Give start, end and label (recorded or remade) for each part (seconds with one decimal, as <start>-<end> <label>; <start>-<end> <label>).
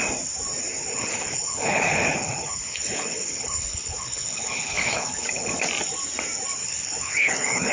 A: 0.0-0.9 recorded; 0.9-5.5 remade; 5.5-6.6 recorded; 6.6-7.7 remade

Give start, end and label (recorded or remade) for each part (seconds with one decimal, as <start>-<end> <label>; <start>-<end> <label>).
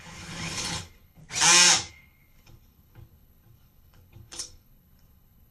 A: 0.0-1.2 remade; 1.2-1.9 recorded; 1.9-5.5 remade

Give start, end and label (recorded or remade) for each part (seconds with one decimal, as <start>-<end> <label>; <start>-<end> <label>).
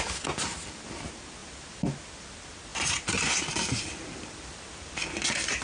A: 0.0-5.6 recorded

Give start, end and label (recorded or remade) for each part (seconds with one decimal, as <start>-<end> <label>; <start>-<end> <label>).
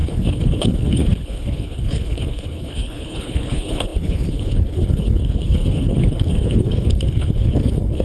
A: 0.0-8.0 remade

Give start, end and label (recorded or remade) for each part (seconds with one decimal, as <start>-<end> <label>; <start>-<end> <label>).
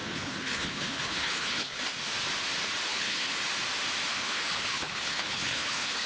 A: 0.0-1.8 remade; 1.8-2.9 recorded; 2.9-3.4 remade; 3.4-4.1 recorded; 4.1-6.1 remade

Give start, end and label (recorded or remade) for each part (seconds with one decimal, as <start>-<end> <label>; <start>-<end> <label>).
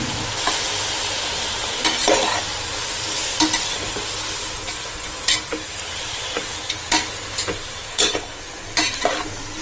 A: 0.0-7.9 recorded; 7.9-8.4 remade; 8.4-9.6 recorded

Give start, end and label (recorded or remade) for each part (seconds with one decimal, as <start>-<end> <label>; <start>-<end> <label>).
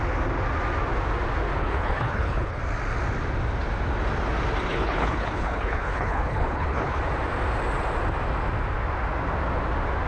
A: 0.0-1.6 recorded; 1.6-2.6 remade; 2.6-4.7 recorded; 4.7-7.0 remade; 7.0-10.1 recorded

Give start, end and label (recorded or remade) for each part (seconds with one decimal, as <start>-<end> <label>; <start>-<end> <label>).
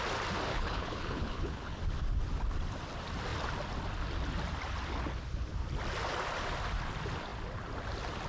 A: 0.0-0.5 recorded; 0.5-1.8 remade; 1.8-8.3 recorded